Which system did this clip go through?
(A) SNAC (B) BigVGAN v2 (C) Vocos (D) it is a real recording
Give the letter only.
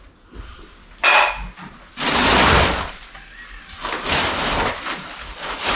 D